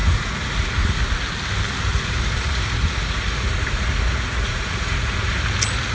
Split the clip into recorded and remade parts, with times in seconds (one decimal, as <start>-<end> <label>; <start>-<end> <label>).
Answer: 0.0-1.0 remade; 1.0-1.9 recorded; 1.9-5.4 remade; 5.4-5.9 recorded